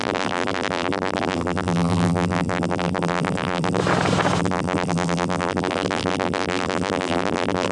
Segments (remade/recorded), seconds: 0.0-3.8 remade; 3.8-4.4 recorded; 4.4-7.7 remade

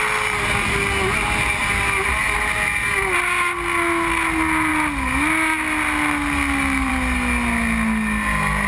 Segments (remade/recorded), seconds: 0.0-8.7 recorded

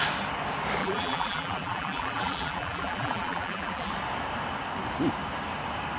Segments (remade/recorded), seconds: 0.0-0.8 recorded; 0.8-3.9 remade; 3.9-6.0 recorded

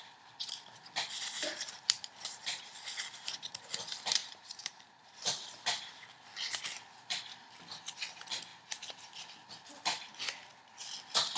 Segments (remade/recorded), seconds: 0.0-4.2 recorded; 4.2-5.0 remade; 5.0-8.5 recorded; 8.5-9.3 remade; 9.3-11.4 recorded

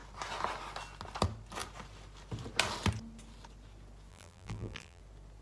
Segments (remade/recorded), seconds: 0.0-4.1 recorded; 4.1-5.0 remade; 5.0-5.4 recorded

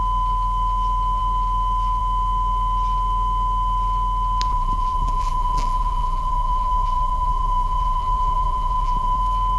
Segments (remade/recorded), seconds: 0.0-4.5 recorded; 4.5-9.2 remade; 9.2-9.6 recorded

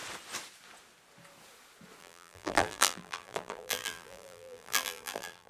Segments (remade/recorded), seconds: 0.0-2.0 recorded; 2.0-5.5 remade